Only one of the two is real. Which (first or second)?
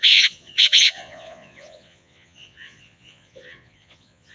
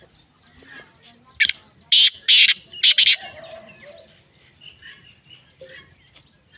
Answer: second